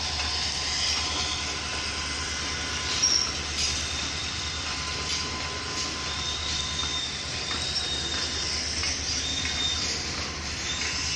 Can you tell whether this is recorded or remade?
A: recorded